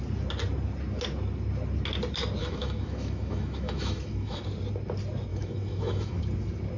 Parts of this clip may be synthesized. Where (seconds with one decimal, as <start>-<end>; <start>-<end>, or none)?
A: 2.4-4.4; 5.3-6.2